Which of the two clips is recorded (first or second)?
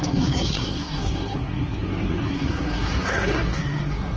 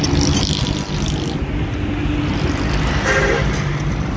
second